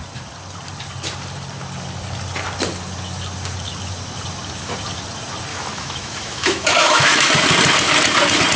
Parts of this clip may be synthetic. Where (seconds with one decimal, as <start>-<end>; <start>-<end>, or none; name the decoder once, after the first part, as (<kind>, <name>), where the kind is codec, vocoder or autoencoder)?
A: 5.5-7.3 (autoencoder, DAC-VAE)

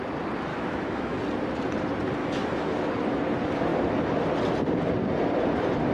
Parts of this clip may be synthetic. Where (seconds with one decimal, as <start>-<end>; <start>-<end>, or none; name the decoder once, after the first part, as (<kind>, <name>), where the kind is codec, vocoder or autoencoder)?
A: 0.5-1.2 (autoencoder, DAC-VAE); 2.2-2.9

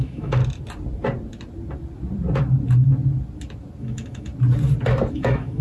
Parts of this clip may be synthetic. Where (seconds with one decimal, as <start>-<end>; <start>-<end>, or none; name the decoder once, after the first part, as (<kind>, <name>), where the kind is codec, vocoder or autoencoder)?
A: 0.0-0.4 (autoencoder, DAC-VAE); 3.8-4.3; 5.1-5.6

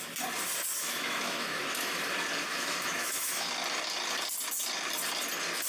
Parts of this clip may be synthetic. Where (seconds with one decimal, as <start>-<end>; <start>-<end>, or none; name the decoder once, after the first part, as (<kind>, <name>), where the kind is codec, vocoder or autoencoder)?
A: 0.8-2.0 (autoencoder, DAC-VAE); 2.5-3.5

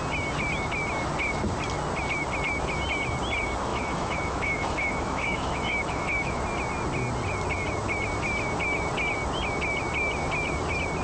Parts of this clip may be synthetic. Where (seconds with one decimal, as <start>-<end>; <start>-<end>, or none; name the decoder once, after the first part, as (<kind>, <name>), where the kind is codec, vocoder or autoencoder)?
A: 3.7-6.4 (autoencoder, DAC-VAE)

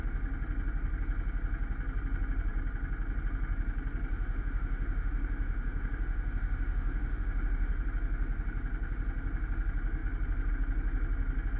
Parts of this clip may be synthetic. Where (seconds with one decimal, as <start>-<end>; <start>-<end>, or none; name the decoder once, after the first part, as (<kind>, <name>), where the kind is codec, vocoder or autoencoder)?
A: 4.1-7.7 (autoencoder, DAC-VAE)

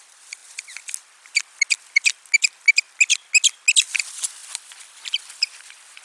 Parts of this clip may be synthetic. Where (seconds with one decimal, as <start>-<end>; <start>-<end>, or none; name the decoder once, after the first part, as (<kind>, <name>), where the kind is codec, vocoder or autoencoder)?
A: none

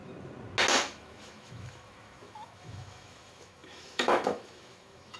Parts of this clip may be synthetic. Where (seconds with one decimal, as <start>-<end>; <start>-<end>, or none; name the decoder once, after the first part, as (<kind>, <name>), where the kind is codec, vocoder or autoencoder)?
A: 0.9-5.2 (autoencoder, DAC-VAE)